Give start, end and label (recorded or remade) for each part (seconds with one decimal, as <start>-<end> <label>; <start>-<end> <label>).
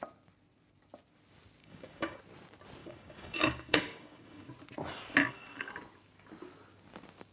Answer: 0.0-1.6 recorded; 1.6-2.2 remade; 2.2-2.8 recorded; 2.8-4.5 remade; 4.5-5.2 recorded; 5.2-5.7 remade; 5.7-7.3 recorded